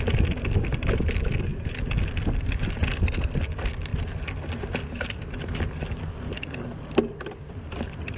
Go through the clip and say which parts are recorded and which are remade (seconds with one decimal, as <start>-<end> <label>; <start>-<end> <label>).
0.0-8.2 recorded